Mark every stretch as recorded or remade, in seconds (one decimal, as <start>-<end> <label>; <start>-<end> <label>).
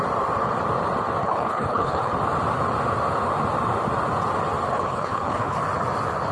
0.0-1.2 recorded; 1.2-2.1 remade; 2.1-4.7 recorded; 4.7-5.6 remade; 5.6-6.3 recorded